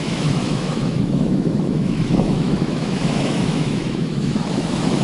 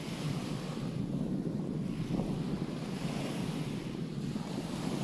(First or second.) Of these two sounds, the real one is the second